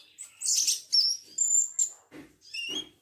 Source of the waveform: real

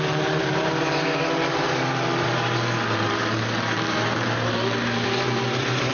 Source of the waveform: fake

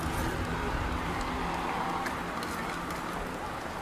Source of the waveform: real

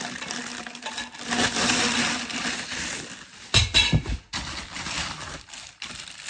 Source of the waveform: real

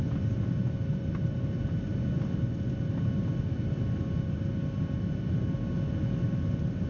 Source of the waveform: real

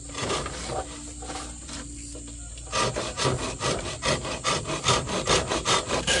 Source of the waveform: fake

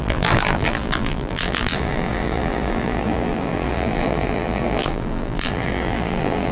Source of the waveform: fake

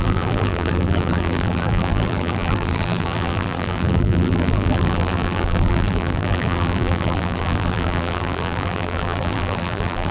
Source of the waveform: fake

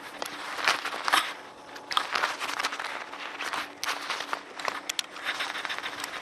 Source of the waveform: real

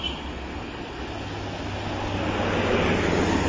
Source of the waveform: real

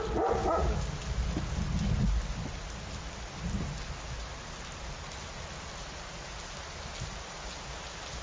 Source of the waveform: real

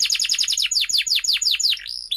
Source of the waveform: fake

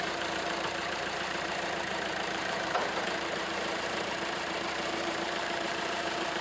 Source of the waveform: fake